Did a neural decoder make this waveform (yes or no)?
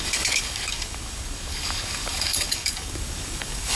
yes